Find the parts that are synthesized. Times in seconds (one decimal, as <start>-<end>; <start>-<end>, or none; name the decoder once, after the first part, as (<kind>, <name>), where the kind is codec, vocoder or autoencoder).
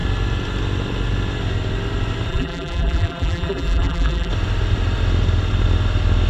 2.3-4.3 (vocoder, BigVGAN v2)